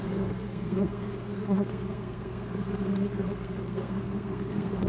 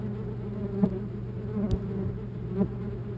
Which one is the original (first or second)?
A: second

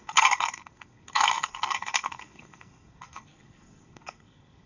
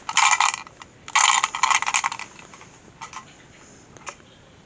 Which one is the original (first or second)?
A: second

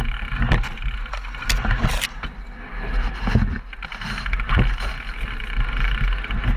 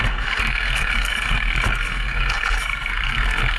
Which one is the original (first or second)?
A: first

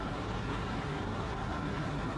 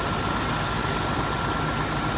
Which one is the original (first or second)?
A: second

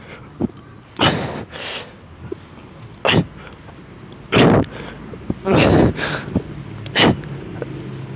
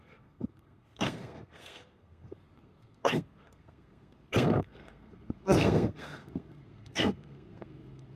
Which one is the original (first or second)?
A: first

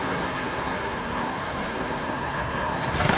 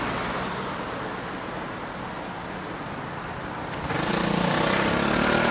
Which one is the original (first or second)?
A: second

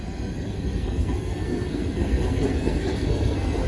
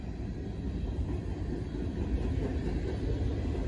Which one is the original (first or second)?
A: second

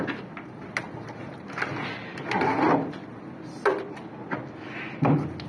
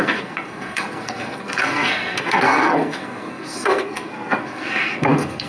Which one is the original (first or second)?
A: first